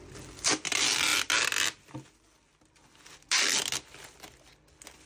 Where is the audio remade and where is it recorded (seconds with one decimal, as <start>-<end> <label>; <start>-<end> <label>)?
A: 0.0-5.1 recorded

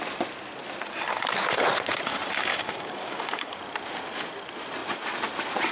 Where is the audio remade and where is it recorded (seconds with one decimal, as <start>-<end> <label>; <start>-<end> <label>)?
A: 0.0-2.5 recorded; 2.5-3.5 remade; 3.5-5.7 recorded

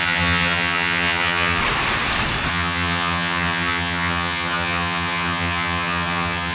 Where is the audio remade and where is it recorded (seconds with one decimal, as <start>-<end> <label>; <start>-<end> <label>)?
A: 0.0-1.6 remade; 1.6-2.5 recorded; 2.5-6.5 remade

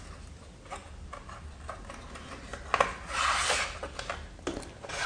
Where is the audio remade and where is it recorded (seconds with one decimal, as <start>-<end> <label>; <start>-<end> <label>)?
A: 0.0-5.1 recorded